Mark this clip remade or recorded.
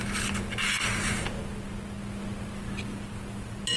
recorded